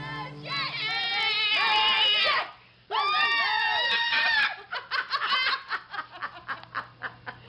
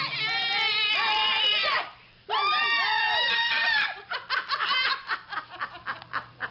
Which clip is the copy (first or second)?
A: second